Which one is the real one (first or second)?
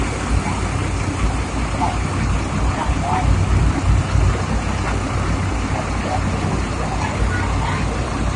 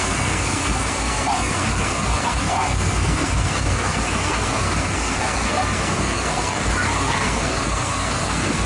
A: first